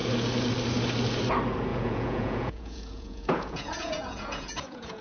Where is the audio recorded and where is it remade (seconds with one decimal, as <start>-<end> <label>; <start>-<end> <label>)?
0.0-1.7 recorded; 1.7-5.0 remade